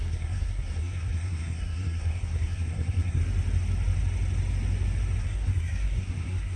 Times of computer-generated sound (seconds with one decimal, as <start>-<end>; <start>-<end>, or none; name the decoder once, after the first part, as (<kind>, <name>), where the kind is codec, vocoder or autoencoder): 0.0-3.2 (codec, SNAC); 5.2-6.6